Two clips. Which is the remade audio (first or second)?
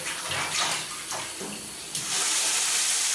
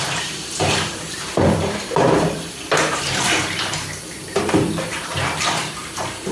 second